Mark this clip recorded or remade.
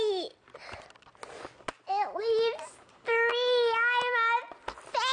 recorded